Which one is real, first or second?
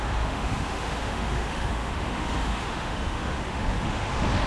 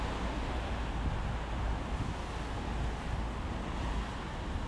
second